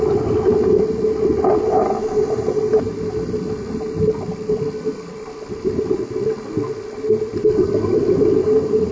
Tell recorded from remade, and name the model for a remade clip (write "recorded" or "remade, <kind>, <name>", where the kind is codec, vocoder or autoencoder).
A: recorded